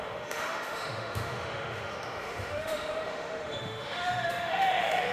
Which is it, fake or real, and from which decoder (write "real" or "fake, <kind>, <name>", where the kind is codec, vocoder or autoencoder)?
fake, autoencoder, DAC-VAE